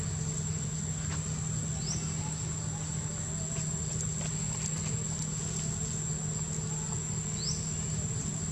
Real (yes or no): yes